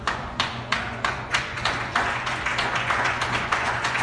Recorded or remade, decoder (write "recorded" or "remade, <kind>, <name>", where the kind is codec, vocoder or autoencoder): remade, vocoder, Vocos